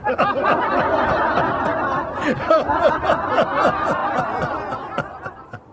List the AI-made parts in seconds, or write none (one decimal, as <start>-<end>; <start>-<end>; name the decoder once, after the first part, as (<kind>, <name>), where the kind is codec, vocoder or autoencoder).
none